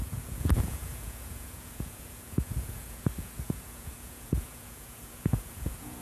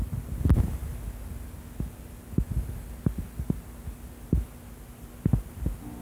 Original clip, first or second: second